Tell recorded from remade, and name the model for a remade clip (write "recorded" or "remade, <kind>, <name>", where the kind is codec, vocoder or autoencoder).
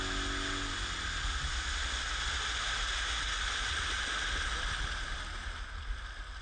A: recorded